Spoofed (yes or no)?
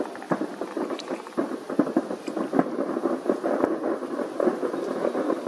no